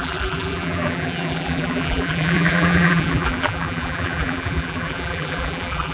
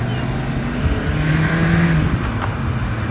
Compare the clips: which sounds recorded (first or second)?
second